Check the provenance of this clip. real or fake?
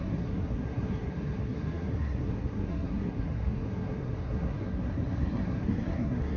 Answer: fake